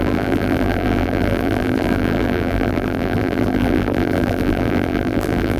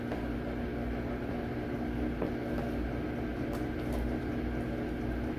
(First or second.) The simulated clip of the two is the first